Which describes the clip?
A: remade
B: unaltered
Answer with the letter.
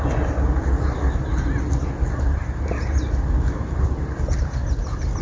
B